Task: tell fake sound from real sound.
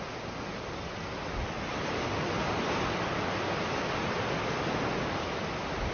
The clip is real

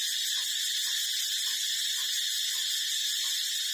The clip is fake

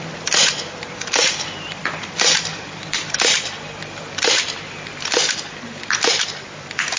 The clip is fake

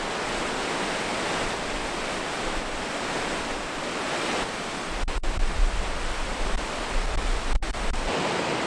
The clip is real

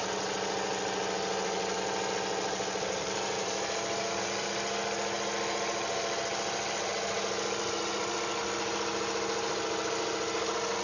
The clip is real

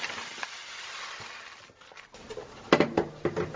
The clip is real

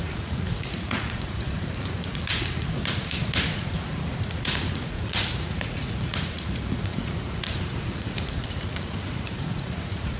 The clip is fake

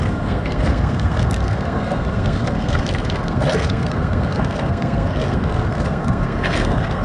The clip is fake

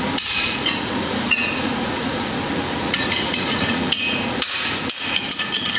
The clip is fake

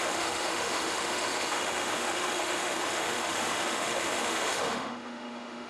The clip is fake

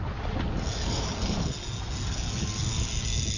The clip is real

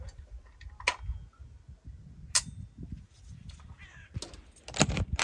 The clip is real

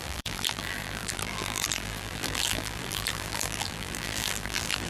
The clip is fake